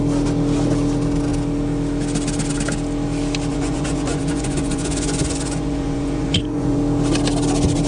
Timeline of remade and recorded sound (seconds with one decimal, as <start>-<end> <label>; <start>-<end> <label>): 0.0-3.5 recorded; 3.5-6.8 remade; 6.8-7.9 recorded